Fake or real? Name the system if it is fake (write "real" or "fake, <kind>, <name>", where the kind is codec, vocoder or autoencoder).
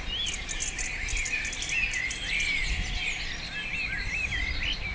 real